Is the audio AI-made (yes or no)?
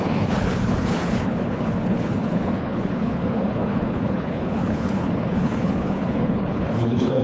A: yes